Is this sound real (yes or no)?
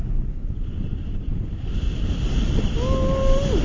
yes